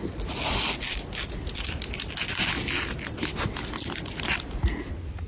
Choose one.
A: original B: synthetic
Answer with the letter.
A